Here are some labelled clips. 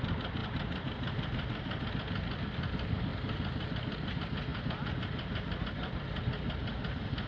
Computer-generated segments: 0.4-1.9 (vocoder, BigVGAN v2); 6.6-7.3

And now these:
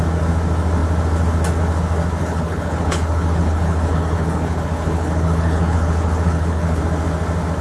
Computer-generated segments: 2.2-6.8 (codec, HILCodec)

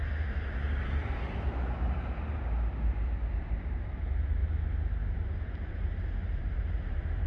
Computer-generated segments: 0.0-1.0 (vocoder, BigVGAN v2); 3.4-4.4; 5.1-7.3

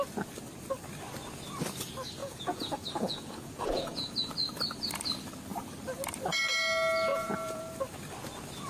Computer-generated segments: 2.2-4.1 (vocoder, Vocos); 7.1-7.6

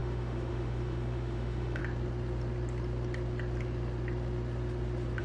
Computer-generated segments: 0.0-1.8 (autoencoder, DAC-VAE)

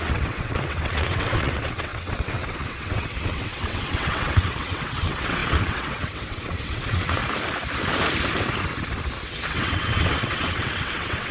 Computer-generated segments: 0.0-7.2 (vocoder, WaveNeXt); 9.2-11.3